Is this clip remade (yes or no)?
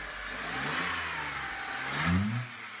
no